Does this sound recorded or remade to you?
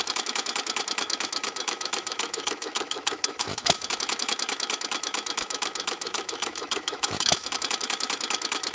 remade